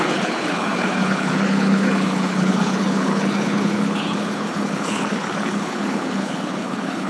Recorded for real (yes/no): no